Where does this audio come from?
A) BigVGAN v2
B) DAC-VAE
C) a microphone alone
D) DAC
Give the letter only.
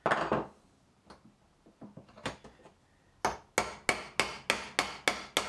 C